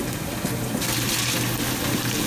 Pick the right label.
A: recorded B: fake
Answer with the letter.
A